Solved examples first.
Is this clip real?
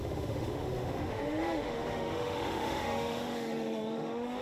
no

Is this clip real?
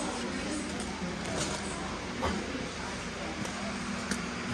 yes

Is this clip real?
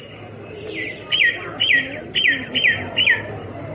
yes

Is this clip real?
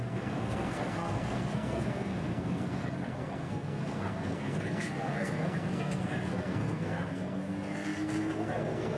no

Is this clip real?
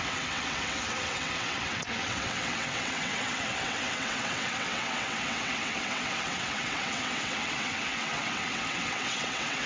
no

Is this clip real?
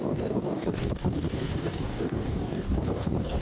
no